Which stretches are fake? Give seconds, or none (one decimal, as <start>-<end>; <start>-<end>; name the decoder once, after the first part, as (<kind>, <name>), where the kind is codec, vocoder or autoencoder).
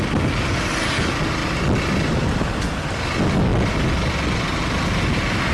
none